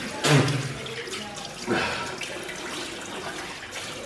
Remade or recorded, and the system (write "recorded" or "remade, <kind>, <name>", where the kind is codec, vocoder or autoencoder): recorded